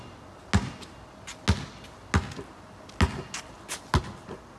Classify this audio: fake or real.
real